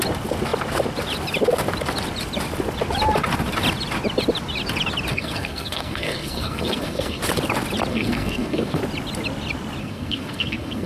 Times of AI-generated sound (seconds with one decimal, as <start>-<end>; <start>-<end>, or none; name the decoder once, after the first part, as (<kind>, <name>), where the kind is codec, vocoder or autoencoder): 5.1-7.2 (codec, SNAC); 7.9-8.8; 9.8-10.9